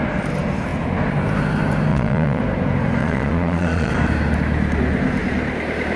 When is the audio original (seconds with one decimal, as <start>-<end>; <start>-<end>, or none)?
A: 0.0-1.9; 2.4-3.0; 3.9-6.0